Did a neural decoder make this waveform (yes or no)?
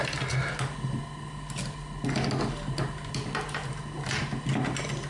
no